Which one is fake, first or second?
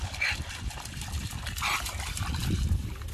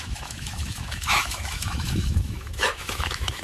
second